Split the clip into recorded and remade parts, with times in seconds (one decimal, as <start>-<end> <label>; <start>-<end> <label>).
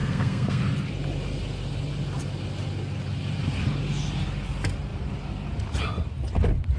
0.0-0.6 remade; 0.6-6.8 recorded